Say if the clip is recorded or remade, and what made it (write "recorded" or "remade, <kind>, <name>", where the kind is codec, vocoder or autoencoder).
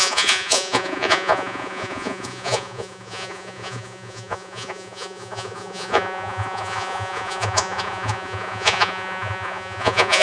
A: remade, vocoder, Vocos